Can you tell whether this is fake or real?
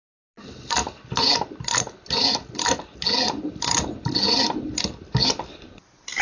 real